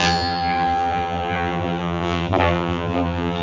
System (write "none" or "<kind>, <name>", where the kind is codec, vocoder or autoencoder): vocoder, BigVGAN v2